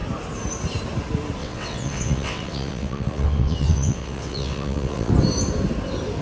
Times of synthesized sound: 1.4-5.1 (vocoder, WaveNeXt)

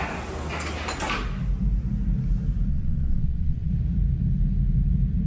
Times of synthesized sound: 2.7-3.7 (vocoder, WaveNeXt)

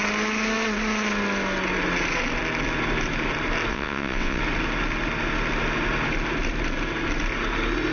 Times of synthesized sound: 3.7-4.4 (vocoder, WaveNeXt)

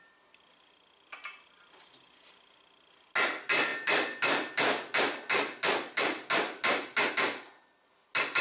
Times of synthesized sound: none

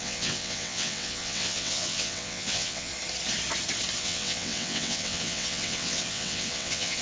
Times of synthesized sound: 0.0-2.9 (vocoder, WaveNeXt); 4.0-7.0